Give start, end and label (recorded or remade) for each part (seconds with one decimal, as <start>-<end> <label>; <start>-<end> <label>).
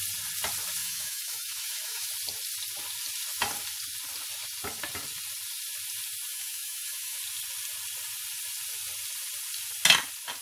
0.0-0.8 recorded; 0.8-2.1 remade; 2.1-6.3 recorded; 6.3-7.2 remade; 7.2-10.4 recorded